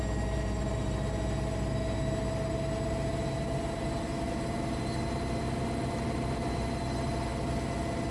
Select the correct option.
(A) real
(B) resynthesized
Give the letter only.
A